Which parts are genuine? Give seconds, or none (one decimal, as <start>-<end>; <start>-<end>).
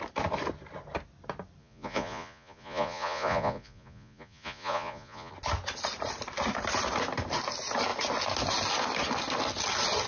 0.0-1.6; 5.3-10.1